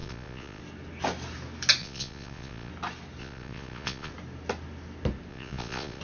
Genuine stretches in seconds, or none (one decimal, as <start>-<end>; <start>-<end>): 0.6-1.8; 2.7-3.2; 4.1-5.3